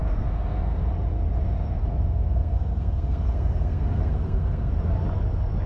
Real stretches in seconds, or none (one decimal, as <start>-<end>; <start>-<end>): 0.9-1.8; 4.7-5.7